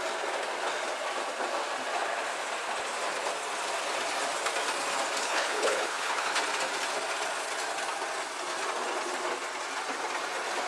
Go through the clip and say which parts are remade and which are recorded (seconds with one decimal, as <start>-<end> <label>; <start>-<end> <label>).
0.0-5.2 recorded; 5.2-6.4 remade; 6.4-10.7 recorded